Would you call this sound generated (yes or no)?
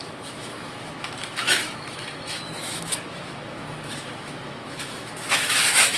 yes